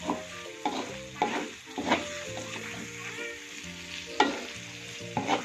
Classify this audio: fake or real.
real